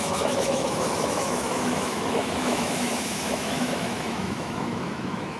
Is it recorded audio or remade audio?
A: remade